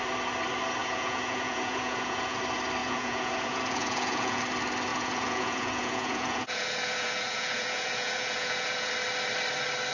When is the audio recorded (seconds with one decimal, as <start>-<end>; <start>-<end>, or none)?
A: 0.0-0.8; 2.4-2.8; 4.4-4.9; 8.9-9.9